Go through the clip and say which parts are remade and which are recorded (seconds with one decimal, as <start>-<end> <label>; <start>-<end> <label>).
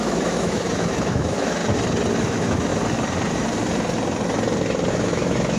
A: 0.0-1.6 remade; 1.6-2.2 recorded; 2.2-2.7 remade; 2.7-4.9 recorded; 4.9-5.6 remade